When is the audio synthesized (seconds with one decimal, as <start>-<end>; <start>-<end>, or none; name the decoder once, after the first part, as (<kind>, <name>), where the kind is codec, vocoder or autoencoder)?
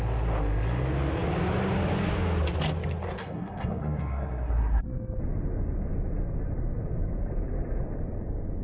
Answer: 3.2-5.2 (codec, SNAC)